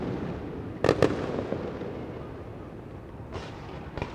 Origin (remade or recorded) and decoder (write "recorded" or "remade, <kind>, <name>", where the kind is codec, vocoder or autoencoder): recorded